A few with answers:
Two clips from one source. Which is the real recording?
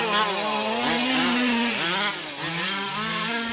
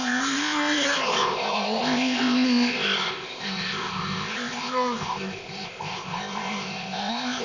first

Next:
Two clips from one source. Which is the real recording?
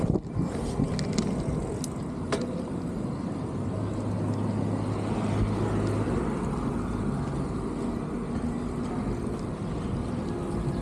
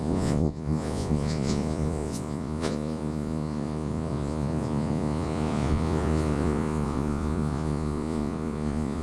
first